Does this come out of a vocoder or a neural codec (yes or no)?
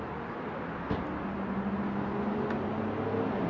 no